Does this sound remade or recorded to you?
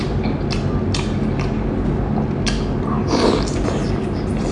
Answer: recorded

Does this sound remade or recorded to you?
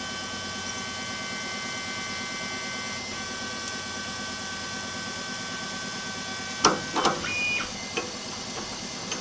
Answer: recorded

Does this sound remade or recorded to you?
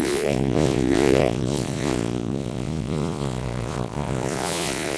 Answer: remade